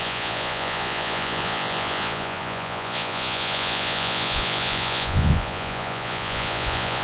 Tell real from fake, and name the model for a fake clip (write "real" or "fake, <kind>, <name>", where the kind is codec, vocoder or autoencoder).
fake, vocoder, Vocos